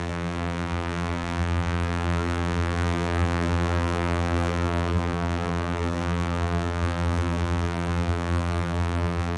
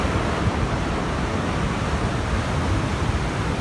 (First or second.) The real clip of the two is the second